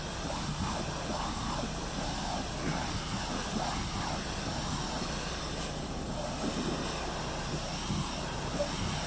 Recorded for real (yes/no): yes